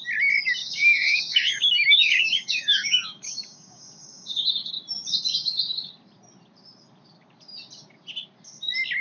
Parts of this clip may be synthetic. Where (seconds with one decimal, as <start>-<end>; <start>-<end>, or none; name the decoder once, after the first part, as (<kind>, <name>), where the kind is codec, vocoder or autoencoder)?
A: 0.6-4.7 (codec, DAC); 5.3-5.9